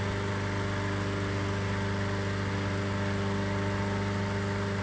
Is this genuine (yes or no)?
yes